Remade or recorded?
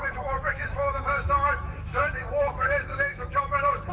remade